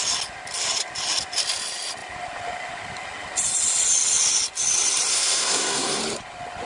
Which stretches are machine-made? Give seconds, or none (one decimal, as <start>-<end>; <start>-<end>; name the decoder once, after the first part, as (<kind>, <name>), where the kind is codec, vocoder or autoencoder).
5.1-6.0 (codec, SNAC)